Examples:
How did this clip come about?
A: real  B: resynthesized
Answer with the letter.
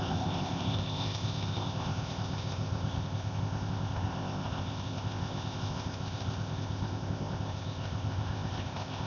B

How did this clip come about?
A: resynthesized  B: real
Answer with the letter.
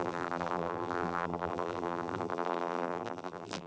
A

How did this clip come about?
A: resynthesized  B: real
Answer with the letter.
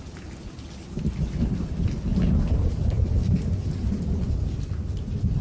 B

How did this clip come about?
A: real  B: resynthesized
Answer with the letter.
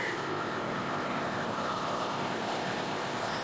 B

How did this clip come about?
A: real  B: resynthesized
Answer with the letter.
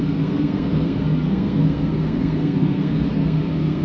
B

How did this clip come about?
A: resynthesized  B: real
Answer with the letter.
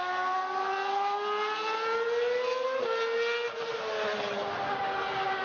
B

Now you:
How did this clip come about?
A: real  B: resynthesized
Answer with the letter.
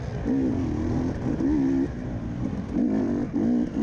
A